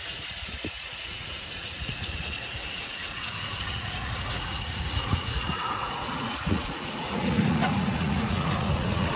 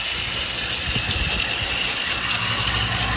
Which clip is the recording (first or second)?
second